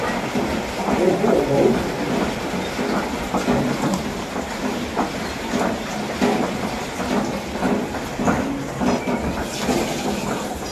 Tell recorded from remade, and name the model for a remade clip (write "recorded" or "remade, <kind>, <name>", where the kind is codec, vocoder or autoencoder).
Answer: recorded